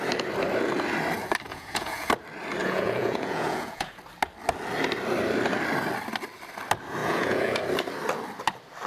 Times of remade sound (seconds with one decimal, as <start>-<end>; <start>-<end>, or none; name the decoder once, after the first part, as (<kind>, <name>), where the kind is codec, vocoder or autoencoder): 1.5-2.1 (vocoder, Vocos); 2.6-4.0; 7.0-7.6